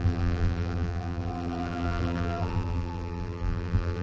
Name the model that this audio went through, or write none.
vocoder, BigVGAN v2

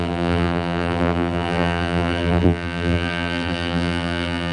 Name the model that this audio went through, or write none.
vocoder, BigVGAN v2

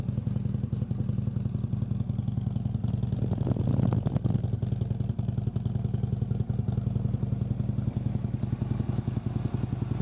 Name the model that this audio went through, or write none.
none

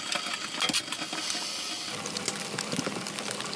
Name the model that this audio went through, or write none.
none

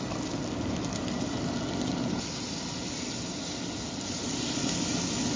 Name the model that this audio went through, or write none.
none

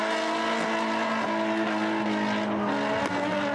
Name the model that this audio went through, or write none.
none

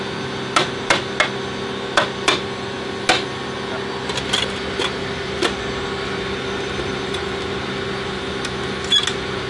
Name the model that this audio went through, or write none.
none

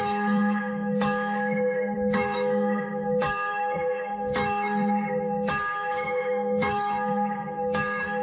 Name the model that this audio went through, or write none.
autoencoder, DAC-VAE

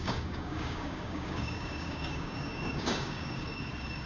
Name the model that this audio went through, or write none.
codec, DAC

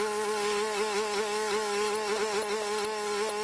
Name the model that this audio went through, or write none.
none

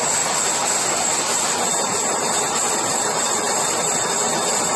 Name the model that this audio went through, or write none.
none